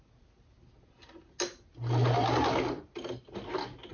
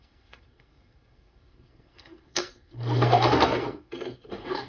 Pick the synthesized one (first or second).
second